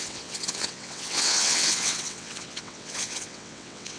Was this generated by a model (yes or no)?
yes